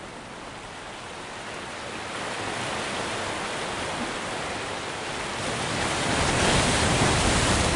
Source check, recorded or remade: recorded